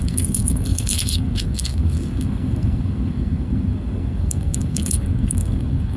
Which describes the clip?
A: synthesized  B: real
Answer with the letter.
A